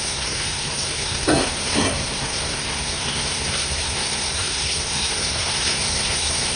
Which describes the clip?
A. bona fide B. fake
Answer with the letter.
B